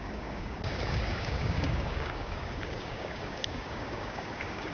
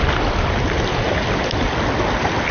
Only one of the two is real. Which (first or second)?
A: second